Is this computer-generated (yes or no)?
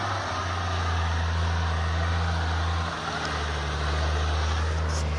no